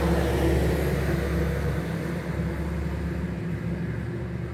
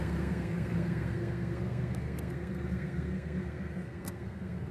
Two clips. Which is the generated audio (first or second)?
second